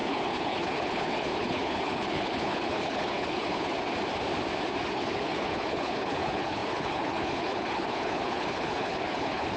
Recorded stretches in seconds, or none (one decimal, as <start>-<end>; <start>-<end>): 3.7-4.8